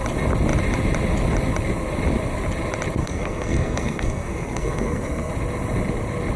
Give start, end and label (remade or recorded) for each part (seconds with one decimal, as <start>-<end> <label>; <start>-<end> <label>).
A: 0.0-3.0 recorded; 3.0-5.3 remade; 5.3-6.4 recorded